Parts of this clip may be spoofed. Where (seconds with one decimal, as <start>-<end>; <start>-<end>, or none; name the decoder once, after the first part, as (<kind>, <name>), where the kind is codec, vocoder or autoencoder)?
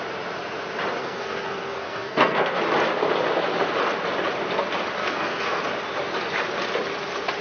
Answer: 1.0-2.6 (codec, SNAC); 5.0-5.6